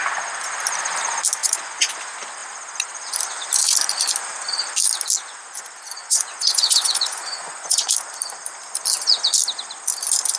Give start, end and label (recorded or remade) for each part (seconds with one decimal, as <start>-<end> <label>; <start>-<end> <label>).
0.0-1.4 recorded; 1.4-1.9 remade; 1.9-6.0 recorded; 6.0-7.9 remade; 7.9-10.4 recorded